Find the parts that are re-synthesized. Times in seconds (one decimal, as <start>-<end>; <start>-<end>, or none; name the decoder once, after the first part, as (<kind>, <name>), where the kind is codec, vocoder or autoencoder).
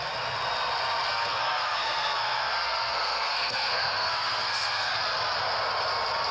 1.1-4.9 (codec, SNAC)